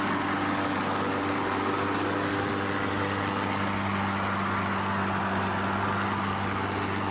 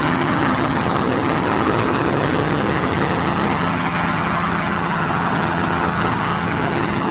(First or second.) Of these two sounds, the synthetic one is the second